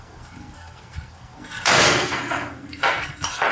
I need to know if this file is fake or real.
fake